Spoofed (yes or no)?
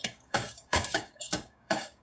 yes